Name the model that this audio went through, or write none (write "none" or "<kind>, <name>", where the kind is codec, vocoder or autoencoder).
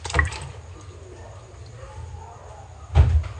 none